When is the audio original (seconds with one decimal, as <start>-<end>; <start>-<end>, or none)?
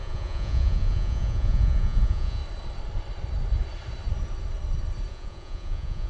2.4-5.1